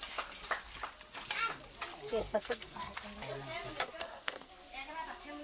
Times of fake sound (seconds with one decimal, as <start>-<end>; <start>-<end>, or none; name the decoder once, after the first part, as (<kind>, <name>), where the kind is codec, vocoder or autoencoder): 2.2-2.9 (codec, SNAC); 4.0-4.5